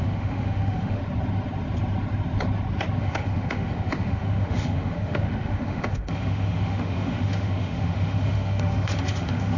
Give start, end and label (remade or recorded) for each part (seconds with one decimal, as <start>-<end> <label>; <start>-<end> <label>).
0.0-1.0 remade; 1.0-3.0 recorded; 3.0-9.6 remade